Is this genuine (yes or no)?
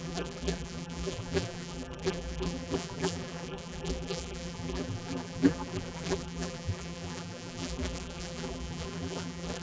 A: no